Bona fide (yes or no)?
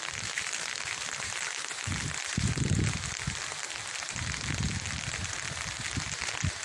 no